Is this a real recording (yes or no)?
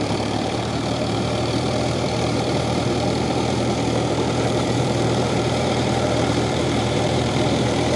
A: no